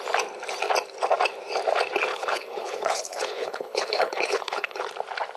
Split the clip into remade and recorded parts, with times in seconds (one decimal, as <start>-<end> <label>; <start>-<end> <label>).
0.0-2.1 recorded; 2.1-4.8 remade; 4.8-5.4 recorded